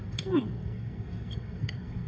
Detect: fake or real fake